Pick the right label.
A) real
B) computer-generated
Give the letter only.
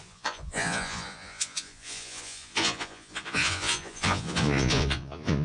B